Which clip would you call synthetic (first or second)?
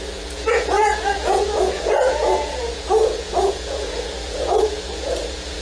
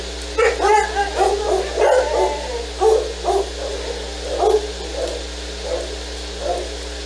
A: first